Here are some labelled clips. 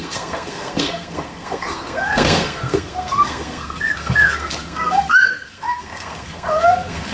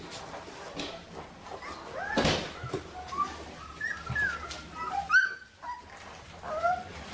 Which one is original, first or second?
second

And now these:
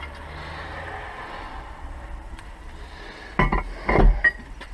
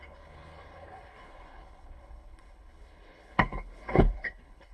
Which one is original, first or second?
first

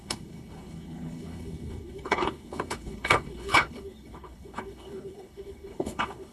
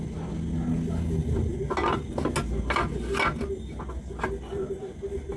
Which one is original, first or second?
second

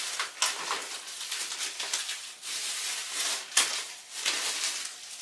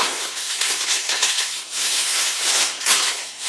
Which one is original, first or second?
first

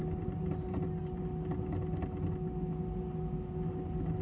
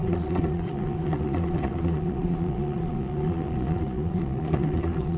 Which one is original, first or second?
first